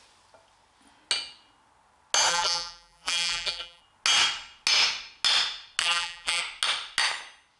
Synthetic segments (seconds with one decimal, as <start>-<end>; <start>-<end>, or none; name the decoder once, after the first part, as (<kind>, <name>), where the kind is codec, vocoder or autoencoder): 2.3-3.8 (vocoder, BigVGAN v2); 5.8-6.4